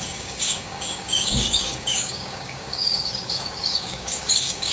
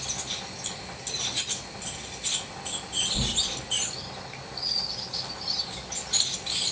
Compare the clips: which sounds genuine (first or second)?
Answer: second